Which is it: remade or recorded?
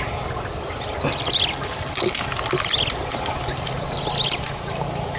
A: recorded